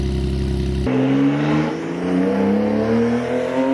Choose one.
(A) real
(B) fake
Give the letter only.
A